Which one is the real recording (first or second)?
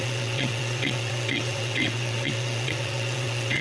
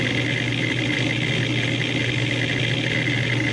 second